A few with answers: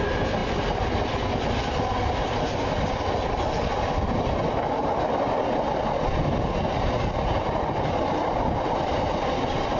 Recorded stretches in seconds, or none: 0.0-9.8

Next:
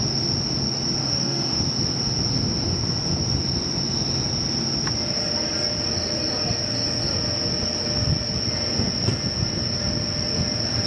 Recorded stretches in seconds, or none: 0.0-1.0; 1.6-10.9

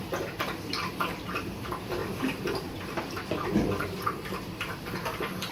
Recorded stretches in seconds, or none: none

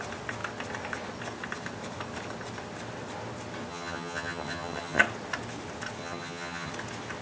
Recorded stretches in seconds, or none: 0.0-3.7; 5.0-6.0; 6.7-7.2

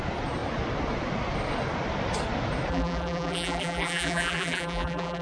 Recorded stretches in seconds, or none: 0.0-2.7